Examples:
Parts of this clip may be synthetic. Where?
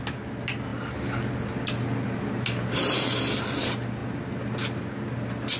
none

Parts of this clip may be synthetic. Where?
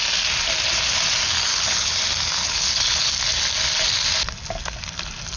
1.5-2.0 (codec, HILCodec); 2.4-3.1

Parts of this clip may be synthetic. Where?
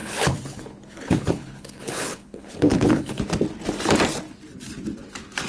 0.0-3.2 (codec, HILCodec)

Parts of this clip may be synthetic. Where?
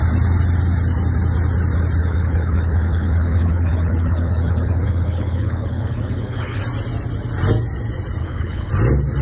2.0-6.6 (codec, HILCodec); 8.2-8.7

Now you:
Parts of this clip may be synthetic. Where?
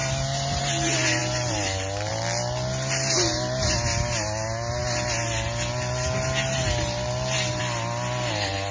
none